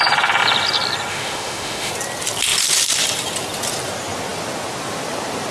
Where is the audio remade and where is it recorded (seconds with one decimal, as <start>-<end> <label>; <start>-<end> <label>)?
0.0-1.1 recorded; 1.1-1.9 remade; 1.9-5.5 recorded